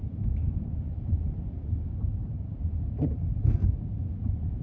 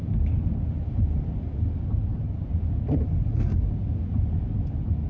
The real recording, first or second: second